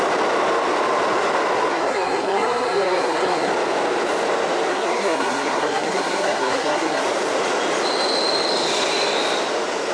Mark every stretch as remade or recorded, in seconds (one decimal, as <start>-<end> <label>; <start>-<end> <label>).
0.0-1.7 recorded; 1.7-3.5 remade; 3.5-4.7 recorded; 4.7-7.0 remade; 7.0-9.9 recorded